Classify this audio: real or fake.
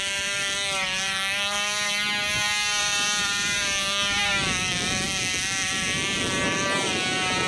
fake